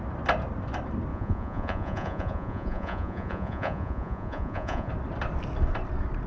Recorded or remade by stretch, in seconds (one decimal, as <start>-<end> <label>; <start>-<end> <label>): 0.0-1.1 recorded; 1.1-4.9 remade; 4.9-6.3 recorded